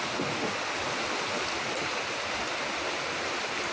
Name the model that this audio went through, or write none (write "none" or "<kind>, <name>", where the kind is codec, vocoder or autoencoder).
none